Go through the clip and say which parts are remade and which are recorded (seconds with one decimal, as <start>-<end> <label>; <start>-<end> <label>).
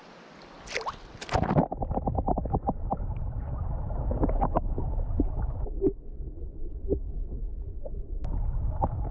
0.0-9.1 recorded